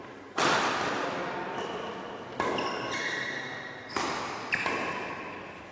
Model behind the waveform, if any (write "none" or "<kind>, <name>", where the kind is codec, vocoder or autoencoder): none